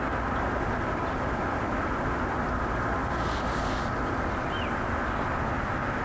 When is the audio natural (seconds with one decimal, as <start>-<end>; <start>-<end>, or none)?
0.0-6.0